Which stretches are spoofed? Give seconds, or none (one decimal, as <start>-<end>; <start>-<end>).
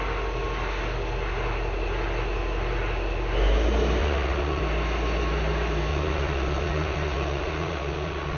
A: 4.0-4.6; 5.9-8.4